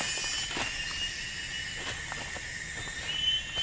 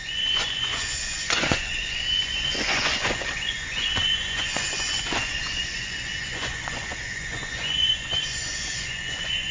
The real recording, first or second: first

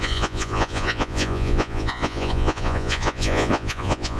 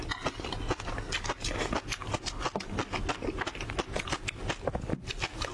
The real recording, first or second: second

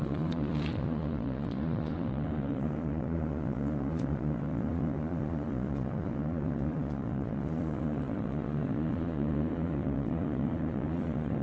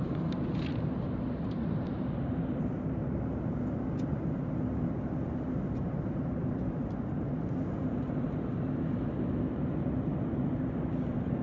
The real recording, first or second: second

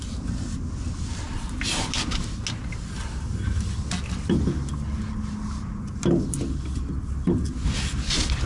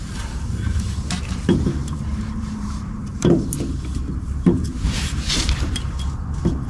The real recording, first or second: first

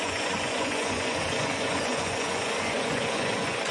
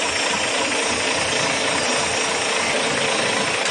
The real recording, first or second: second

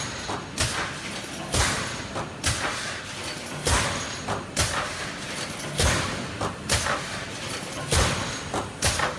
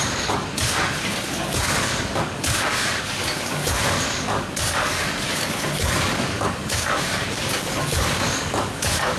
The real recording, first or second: first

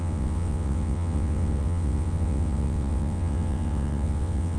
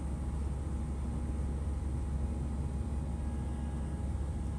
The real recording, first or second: second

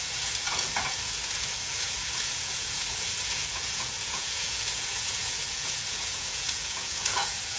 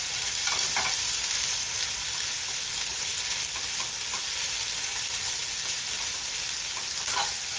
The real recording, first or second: second